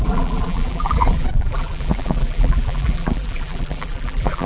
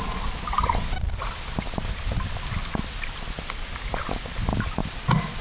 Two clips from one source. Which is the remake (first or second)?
first